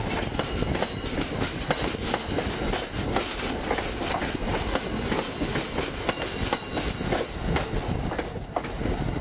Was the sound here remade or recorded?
recorded